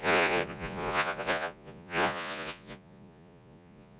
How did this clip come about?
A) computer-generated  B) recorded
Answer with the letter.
A